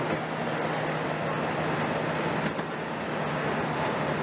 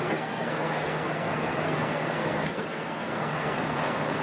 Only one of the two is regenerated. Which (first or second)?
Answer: second